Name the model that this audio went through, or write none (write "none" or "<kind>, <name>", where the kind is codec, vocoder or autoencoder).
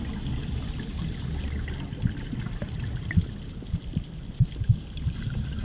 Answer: none